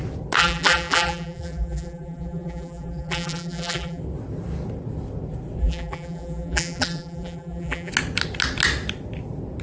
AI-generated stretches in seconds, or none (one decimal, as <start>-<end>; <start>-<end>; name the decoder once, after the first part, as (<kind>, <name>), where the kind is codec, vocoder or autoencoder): 0.4-4.0 (vocoder, BigVGAN v2); 5.6-7.9